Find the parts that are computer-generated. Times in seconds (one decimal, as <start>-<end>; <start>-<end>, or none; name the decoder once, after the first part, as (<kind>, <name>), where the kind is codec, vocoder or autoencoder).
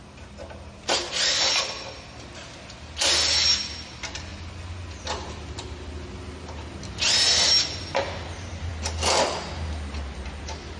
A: none